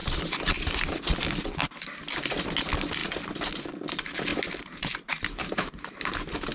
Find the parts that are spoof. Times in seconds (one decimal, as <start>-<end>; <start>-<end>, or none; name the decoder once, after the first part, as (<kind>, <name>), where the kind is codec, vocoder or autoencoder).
4.3-6.1 (vocoder, BigVGAN v2)

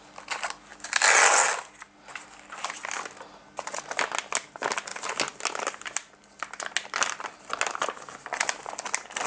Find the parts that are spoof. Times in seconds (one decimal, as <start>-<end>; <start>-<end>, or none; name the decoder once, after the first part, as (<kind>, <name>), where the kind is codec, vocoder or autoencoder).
none

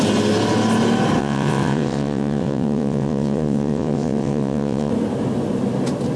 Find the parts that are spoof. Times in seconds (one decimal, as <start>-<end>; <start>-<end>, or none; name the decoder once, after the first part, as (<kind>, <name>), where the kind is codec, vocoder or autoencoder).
1.2-4.9 (vocoder, WaveNeXt)

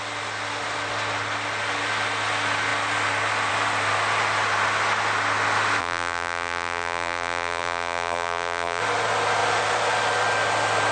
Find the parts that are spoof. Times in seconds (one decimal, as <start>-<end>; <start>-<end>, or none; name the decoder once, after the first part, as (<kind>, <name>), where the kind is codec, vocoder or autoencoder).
5.8-8.8 (vocoder, BigVGAN v2)

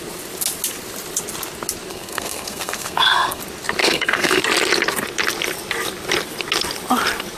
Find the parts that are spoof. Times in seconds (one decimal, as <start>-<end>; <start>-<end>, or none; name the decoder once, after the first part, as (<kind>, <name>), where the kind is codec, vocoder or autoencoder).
1.9-3.4 (codec, SNAC); 3.8-4.4

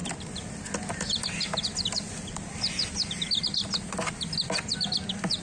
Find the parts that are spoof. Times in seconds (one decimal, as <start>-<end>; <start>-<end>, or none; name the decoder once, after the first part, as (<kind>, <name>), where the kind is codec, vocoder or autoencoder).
none

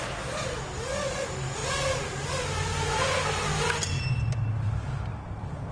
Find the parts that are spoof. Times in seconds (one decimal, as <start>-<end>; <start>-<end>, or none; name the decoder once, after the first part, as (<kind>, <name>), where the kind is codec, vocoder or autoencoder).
none